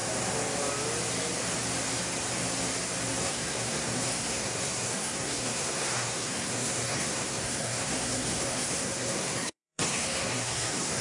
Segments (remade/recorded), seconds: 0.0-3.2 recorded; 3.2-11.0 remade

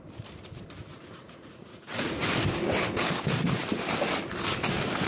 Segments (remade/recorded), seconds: 0.0-0.9 recorded; 0.9-2.2 remade; 2.2-5.1 recorded

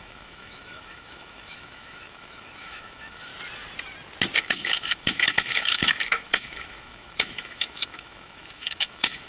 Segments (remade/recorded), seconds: 0.0-3.3 remade; 3.3-4.4 recorded; 4.4-9.3 remade

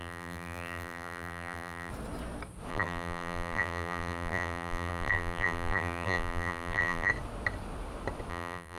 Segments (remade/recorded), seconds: 0.0-1.9 remade; 1.9-2.7 recorded; 2.7-7.1 remade; 7.1-8.3 recorded; 8.3-8.8 remade

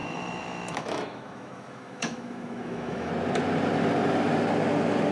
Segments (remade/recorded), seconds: 0.0-3.1 remade; 3.1-5.1 recorded

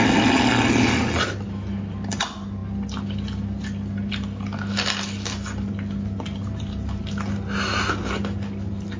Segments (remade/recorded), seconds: 0.0-9.0 recorded

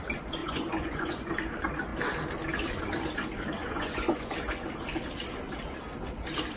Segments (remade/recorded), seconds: 0.0-0.4 recorded; 0.4-1.3 remade; 1.3-3.6 recorded; 3.6-4.3 remade; 4.3-6.6 recorded